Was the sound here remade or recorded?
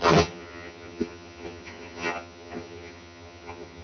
remade